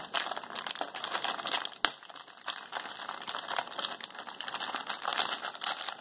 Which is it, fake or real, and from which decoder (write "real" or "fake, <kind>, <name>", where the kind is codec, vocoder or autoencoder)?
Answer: real